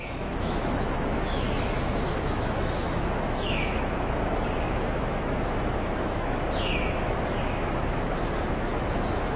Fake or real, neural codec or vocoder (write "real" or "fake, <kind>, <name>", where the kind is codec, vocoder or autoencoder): fake, autoencoder, DAC-VAE